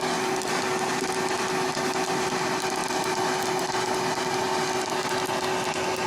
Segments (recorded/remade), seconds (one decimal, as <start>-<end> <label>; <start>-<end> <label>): 0.0-6.1 recorded